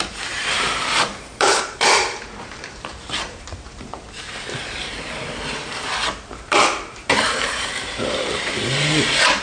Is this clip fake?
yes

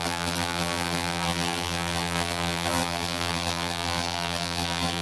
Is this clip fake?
yes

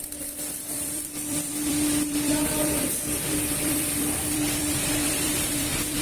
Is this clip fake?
yes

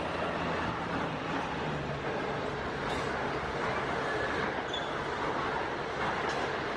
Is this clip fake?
no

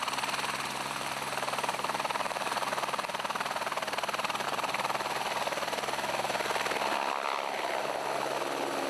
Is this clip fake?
no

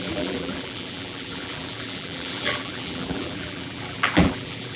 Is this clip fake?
yes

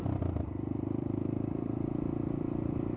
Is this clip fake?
yes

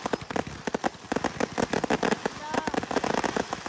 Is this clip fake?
no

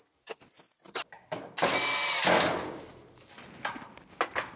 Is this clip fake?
no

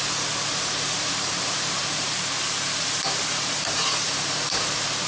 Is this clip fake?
yes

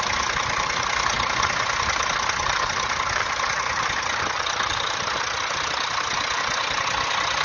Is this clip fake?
no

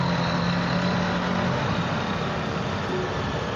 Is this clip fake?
no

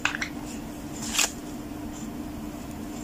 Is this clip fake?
no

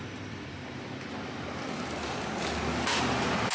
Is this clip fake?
yes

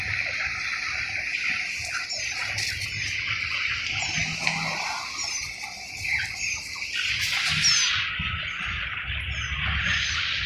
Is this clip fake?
no